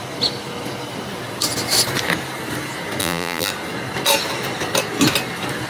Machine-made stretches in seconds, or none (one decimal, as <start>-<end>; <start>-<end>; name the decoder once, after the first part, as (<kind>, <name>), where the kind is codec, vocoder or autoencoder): 3.0-3.5 (vocoder, BigVGAN v2)